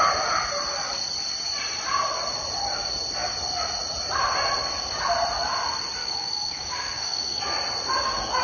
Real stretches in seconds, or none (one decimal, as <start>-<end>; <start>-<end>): 0.0-6.0; 7.4-8.4